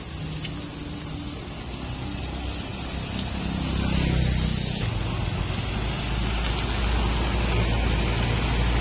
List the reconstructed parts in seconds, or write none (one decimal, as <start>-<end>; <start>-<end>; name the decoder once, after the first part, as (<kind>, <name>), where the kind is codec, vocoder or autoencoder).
none